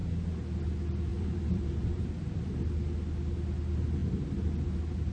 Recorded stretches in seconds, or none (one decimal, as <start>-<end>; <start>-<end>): 0.0-1.1; 2.2-5.1